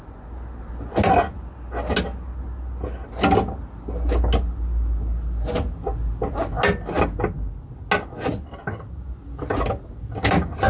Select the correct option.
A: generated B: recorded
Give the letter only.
B